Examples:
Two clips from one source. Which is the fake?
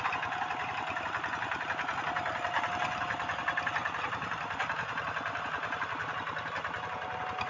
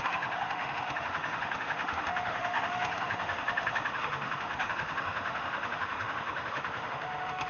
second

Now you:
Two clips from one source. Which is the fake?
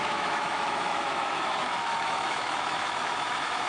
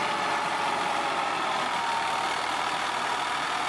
first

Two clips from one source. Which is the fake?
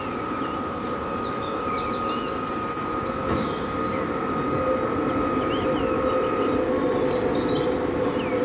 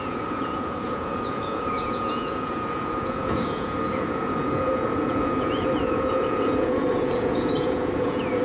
second